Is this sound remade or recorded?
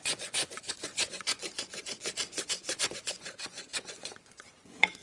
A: remade